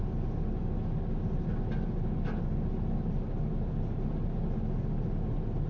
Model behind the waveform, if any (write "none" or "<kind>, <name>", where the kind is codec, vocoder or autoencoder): none